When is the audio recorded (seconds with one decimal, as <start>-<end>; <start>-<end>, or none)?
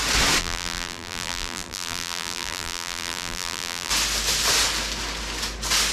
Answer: 0.0-0.4; 3.9-5.9